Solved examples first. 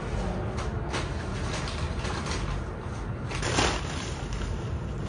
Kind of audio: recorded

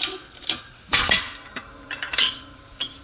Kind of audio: remade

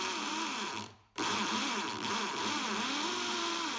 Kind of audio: remade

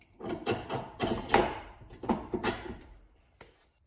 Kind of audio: remade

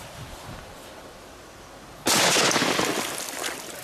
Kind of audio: recorded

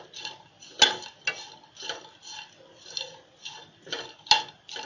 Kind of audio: recorded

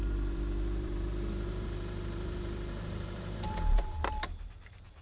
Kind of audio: remade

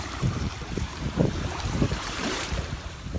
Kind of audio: remade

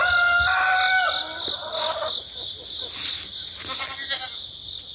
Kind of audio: recorded